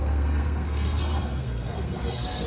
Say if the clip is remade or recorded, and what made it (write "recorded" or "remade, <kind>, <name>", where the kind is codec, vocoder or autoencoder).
remade, codec, SNAC